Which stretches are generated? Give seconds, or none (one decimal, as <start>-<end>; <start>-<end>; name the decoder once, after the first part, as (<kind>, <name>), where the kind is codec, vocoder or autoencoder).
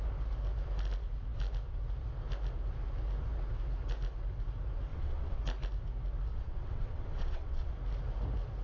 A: 4.9-5.4 (vocoder, WaveNeXt); 6.3-7.7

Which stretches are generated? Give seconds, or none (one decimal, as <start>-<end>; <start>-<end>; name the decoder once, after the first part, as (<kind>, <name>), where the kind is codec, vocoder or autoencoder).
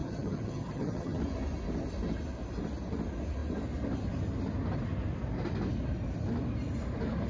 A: 0.0-1.2 (vocoder, HiFi-GAN)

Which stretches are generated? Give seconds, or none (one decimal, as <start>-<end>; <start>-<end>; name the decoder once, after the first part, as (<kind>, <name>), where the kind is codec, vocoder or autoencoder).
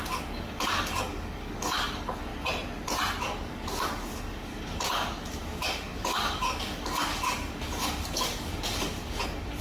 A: 0.0-2.3 (codec, DAC); 3.2-9.6